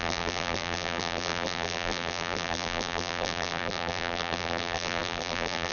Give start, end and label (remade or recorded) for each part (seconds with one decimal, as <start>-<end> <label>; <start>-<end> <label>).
0.0-5.7 remade